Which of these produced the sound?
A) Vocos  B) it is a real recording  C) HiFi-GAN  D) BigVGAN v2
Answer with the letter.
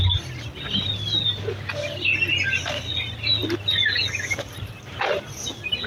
B